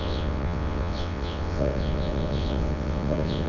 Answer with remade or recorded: remade